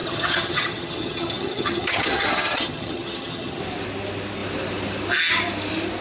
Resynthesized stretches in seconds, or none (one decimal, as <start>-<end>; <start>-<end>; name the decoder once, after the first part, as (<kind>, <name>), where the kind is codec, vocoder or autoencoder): 0.0-3.6 (vocoder, HiFi-GAN)